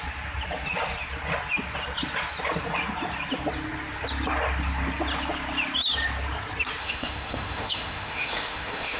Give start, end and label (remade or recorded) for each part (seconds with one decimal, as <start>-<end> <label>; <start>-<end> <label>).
0.0-6.8 recorded; 6.8-9.0 remade